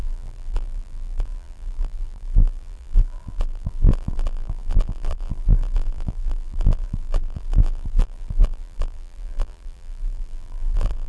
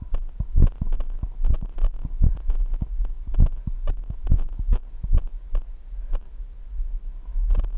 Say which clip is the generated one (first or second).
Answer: first